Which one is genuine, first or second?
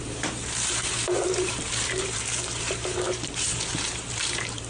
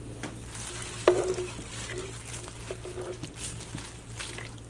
second